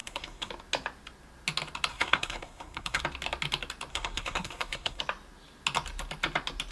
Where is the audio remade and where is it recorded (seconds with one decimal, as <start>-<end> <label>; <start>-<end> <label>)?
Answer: 0.0-0.5 remade; 0.5-1.9 recorded; 1.9-3.0 remade; 3.0-3.9 recorded; 3.9-5.0 remade; 5.0-6.7 recorded